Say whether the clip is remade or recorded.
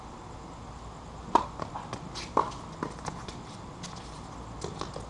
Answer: recorded